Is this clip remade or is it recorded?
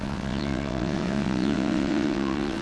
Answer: remade